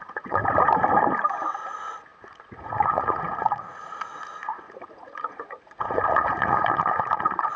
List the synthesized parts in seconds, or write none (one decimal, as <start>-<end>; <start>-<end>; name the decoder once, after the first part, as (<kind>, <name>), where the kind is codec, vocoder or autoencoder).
0.0-0.4 (vocoder, Vocos); 1.3-7.6